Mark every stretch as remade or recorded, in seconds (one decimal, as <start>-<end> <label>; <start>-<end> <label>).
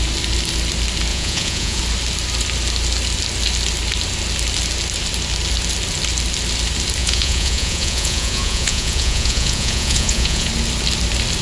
0.0-1.1 recorded; 1.1-1.8 remade; 1.8-7.0 recorded; 7.0-10.5 remade; 10.5-11.4 recorded